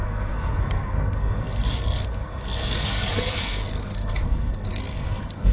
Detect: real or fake fake